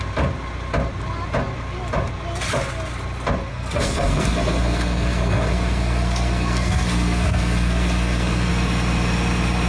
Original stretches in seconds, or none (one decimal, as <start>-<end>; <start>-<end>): 0.0-3.5; 8.5-9.7